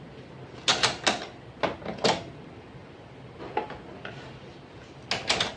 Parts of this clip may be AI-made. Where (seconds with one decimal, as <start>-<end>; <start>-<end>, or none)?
none